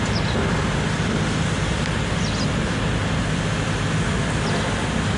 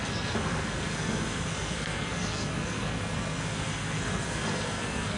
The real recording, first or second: first